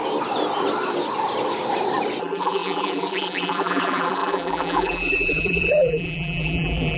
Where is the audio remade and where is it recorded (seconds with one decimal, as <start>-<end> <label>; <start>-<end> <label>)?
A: 0.0-2.2 recorded; 2.2-7.0 remade